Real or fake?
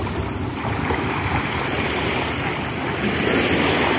real